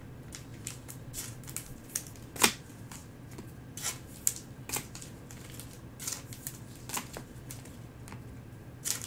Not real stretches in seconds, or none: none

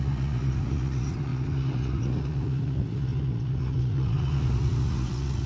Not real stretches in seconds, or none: 0.0-5.5 (vocoder, Vocos)